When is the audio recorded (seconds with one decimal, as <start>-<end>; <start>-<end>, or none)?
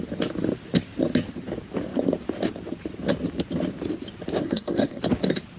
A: 0.0-4.4; 5.0-5.6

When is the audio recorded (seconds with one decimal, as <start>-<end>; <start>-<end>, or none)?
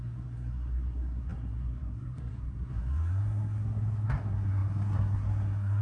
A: none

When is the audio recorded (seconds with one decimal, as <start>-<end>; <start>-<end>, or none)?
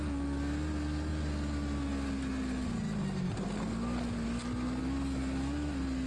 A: 0.0-6.1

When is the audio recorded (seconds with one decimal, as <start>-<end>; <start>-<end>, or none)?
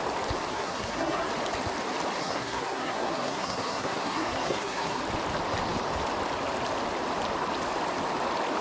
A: 0.0-0.5; 1.3-2.2; 5.0-8.6